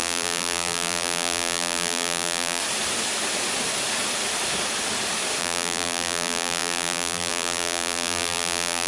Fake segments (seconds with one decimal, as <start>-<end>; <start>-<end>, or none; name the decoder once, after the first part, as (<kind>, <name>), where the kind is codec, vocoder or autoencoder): 0.0-2.6 (vocoder, BigVGAN v2); 5.4-8.9